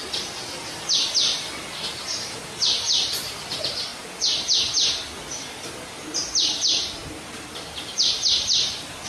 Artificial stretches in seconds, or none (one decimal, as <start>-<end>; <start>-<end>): none